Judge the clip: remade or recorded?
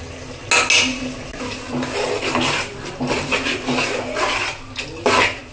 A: recorded